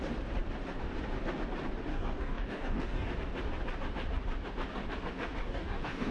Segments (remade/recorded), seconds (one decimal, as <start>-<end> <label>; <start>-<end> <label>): 0.0-1.9 recorded; 1.9-3.1 remade; 3.1-5.4 recorded; 5.4-6.1 remade